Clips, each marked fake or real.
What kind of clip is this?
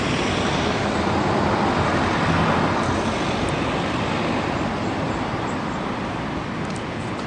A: real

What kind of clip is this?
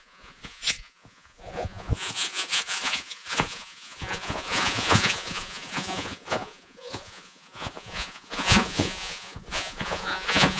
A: fake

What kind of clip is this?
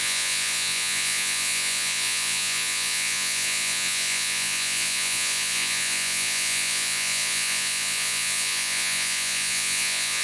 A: fake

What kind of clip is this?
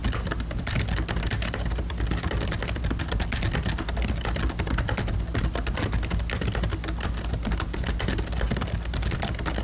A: real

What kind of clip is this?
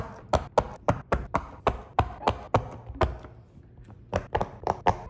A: real